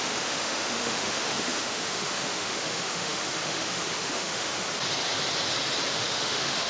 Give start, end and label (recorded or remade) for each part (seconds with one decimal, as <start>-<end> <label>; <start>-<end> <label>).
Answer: 0.0-4.5 remade; 4.5-5.9 recorded; 5.9-6.7 remade